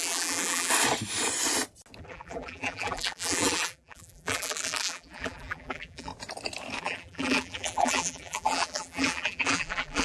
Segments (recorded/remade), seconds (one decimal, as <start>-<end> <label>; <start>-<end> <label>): 0.0-0.7 remade; 0.7-2.0 recorded; 2.0-6.1 remade; 6.1-6.8 recorded; 6.8-10.0 remade